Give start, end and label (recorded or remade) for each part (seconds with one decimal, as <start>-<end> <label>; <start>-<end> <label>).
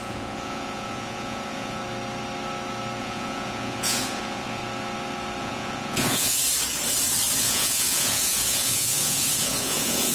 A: 0.0-1.8 remade; 1.8-3.0 recorded; 3.0-4.6 remade; 4.6-5.4 recorded; 5.4-6.4 remade; 6.4-7.4 recorded; 7.4-10.1 remade